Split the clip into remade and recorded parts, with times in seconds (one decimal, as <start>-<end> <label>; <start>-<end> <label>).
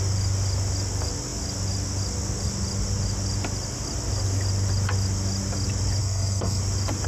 0.0-6.0 recorded; 6.0-6.6 remade; 6.6-7.1 recorded